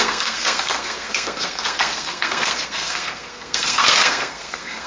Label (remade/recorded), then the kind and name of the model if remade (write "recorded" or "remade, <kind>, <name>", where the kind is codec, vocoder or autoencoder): remade, codec, SNAC